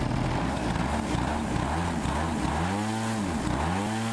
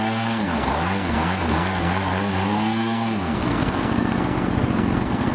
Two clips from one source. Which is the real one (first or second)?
first